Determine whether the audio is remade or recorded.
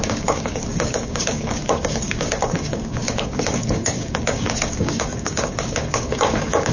remade